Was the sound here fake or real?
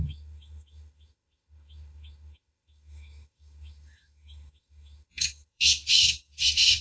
fake